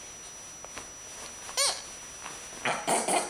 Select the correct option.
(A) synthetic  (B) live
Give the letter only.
B